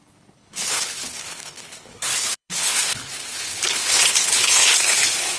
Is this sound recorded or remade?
remade